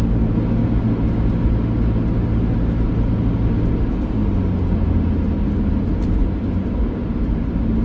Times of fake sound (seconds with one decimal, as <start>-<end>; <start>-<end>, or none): none